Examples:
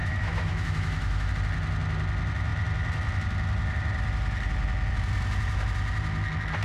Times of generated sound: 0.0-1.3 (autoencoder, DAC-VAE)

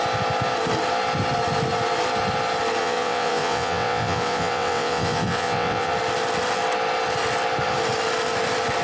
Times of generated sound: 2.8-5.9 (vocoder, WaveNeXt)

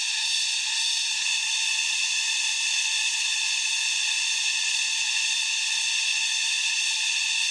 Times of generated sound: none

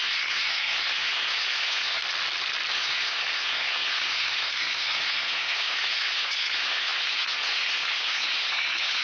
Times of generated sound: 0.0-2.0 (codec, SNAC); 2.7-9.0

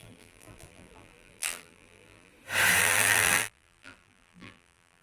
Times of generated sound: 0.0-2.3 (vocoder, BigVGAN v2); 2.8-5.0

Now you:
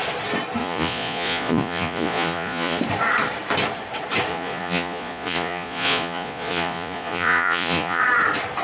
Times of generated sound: 0.6-2.8 (vocoder, Vocos); 4.3-8.0

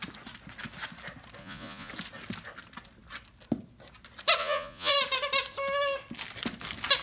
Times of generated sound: 1.4-1.9 (vocoder, Vocos); 4.4-4.9

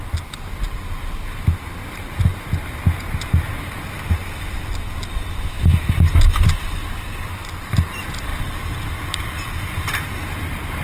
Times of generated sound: none